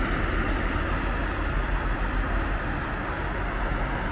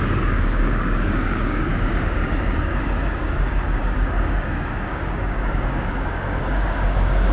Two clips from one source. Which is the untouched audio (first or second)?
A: first